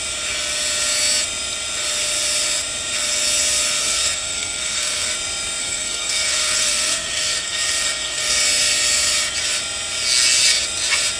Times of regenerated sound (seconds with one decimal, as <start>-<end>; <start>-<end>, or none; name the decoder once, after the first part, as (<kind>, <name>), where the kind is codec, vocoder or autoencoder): 3.8-5.1 (codec, SNAC); 5.6-8.3